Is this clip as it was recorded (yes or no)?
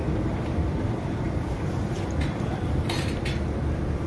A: no